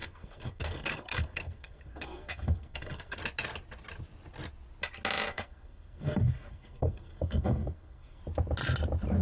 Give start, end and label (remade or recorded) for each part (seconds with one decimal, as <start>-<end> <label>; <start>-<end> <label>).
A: 0.0-3.2 remade; 3.2-5.3 recorded; 5.3-8.2 remade; 8.2-9.2 recorded